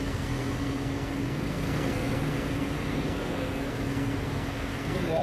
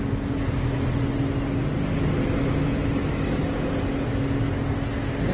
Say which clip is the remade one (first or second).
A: first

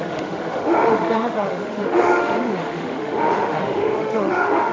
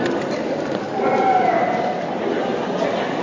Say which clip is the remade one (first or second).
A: first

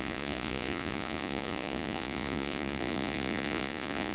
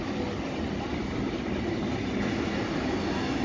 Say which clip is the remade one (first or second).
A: first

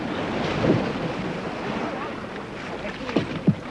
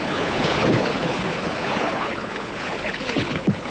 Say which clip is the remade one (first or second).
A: second